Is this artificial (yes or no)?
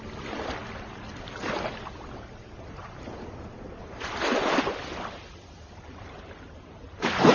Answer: no